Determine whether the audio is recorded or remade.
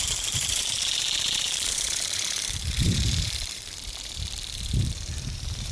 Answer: remade